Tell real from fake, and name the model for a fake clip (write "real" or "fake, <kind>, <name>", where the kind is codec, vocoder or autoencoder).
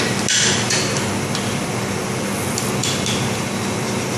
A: real